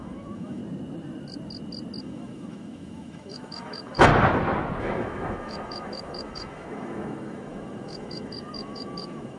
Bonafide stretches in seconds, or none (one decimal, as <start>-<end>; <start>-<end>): 0.6-2.0; 4.1-4.8